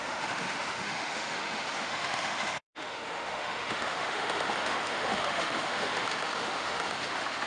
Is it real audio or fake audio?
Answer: fake